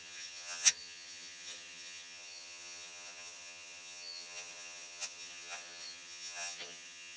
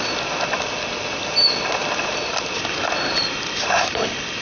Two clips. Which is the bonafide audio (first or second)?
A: second